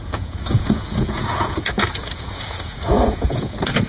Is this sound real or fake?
fake